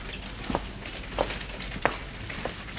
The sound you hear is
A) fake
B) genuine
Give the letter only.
B